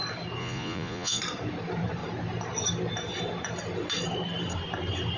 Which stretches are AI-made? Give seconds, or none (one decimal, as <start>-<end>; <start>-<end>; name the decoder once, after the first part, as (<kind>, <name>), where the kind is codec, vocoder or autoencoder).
0.4-1.2 (vocoder, Vocos)